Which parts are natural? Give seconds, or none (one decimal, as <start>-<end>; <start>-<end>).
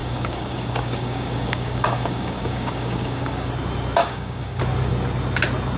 3.5-4.0; 4.6-5.8